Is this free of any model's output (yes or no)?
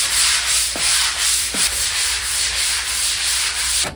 no